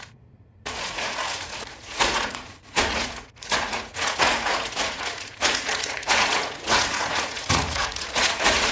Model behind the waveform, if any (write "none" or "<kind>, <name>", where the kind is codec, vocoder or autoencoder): vocoder, Vocos